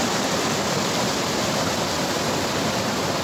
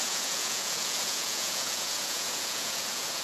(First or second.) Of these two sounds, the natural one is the first